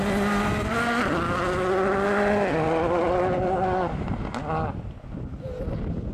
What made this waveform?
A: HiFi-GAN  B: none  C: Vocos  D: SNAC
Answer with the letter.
B